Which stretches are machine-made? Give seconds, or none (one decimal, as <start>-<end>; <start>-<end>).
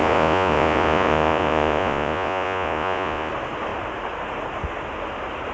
0.0-3.3